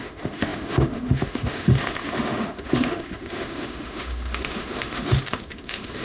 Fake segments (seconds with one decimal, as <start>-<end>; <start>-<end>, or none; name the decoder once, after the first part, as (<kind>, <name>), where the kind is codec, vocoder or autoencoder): 0.0-6.0 (autoencoder, DAC-VAE)